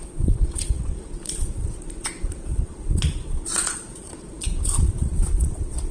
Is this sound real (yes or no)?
no